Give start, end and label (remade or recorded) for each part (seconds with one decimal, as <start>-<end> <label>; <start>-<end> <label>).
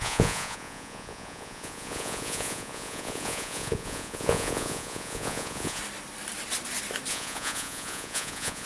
0.0-5.8 remade; 5.8-7.1 recorded; 7.1-8.7 remade